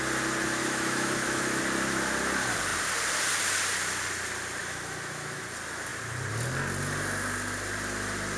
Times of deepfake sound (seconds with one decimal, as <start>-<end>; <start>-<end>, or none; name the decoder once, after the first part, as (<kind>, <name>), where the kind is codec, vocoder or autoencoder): 0.6-1.6 (autoencoder, DAC-VAE); 4.6-5.4